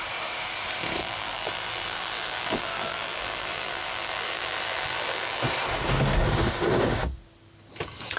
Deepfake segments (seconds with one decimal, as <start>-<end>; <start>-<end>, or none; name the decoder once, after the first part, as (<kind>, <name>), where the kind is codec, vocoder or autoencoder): 1.0-5.4 (vocoder, BigVGAN v2)